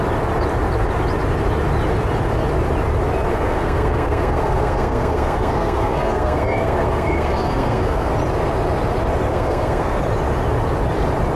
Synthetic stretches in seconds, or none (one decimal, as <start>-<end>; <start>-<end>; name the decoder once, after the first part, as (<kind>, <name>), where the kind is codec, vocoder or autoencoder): 3.3-8.1 (codec, SNAC); 9.3-10.0